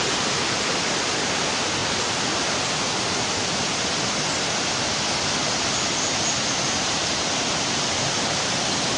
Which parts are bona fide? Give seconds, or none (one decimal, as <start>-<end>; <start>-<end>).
0.0-9.0